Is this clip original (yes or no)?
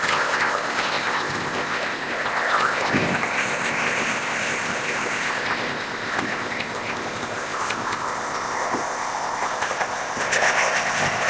no